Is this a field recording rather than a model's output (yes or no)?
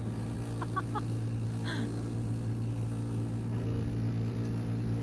yes